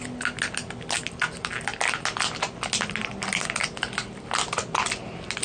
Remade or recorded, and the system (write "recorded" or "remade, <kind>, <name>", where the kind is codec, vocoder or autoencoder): recorded